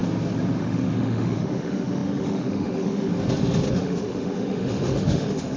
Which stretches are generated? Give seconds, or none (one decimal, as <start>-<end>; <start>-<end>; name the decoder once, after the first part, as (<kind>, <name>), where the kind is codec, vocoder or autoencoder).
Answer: 0.6-3.1 (autoencoder, DAC-VAE); 3.7-5.6